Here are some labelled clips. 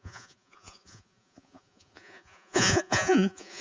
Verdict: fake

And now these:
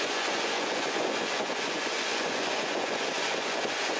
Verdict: fake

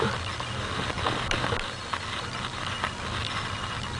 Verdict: real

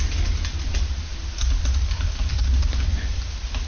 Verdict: real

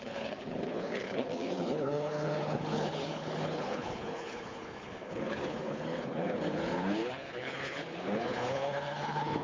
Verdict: fake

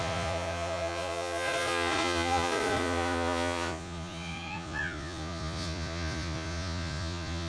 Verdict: fake